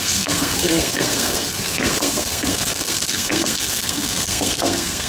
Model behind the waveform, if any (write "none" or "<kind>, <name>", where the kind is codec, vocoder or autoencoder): codec, SNAC